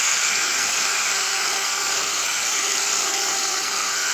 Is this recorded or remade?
remade